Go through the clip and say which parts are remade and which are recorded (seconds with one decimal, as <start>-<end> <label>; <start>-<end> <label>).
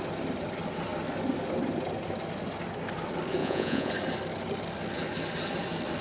0.0-3.4 recorded; 3.4-3.9 remade; 3.9-6.0 recorded